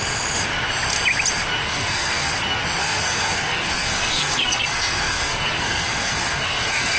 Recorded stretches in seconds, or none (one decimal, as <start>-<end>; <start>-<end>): 0.0-1.6; 2.3-2.8